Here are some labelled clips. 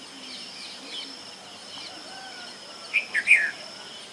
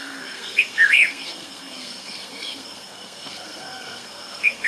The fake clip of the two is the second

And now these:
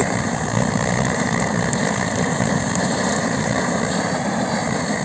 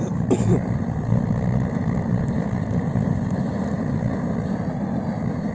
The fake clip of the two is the first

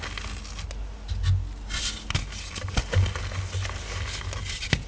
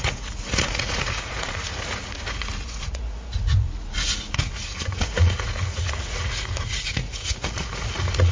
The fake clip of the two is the second